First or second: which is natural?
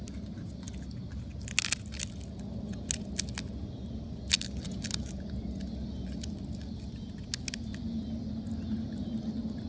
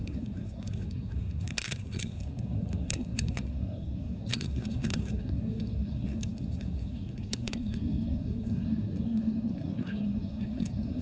first